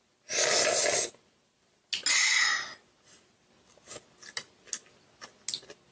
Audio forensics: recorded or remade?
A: recorded